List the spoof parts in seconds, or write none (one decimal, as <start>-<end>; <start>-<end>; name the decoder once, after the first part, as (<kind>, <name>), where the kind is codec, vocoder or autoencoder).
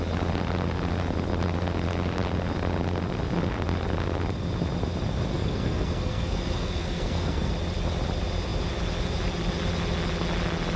5.3-7.5 (codec, SNAC)